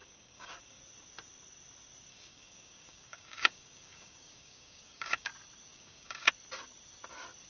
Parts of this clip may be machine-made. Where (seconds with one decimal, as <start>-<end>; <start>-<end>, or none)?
0.0-0.8; 2.1-5.3; 5.7-6.3